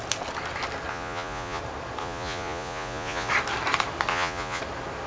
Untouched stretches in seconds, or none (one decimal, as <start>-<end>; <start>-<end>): 0.0-0.9; 1.6-2.0; 3.3-4.1; 4.6-5.1